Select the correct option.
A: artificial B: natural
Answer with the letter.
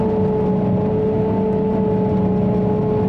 B